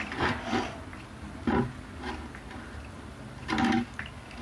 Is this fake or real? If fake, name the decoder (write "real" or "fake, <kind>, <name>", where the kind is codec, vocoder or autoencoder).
real